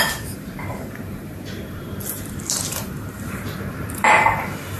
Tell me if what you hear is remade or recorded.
remade